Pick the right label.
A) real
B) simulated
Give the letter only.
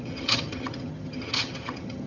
B